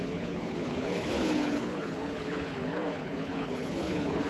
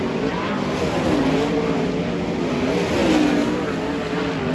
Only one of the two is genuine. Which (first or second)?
second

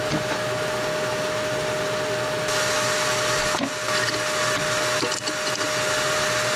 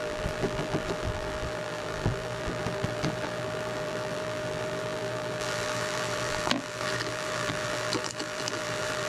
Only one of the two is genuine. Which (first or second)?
first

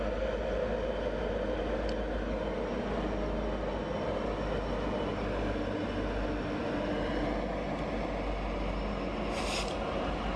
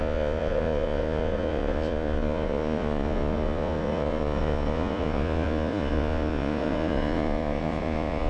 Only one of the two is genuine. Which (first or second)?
first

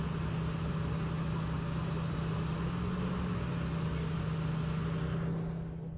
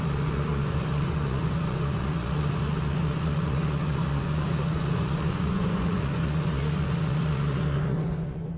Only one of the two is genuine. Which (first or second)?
first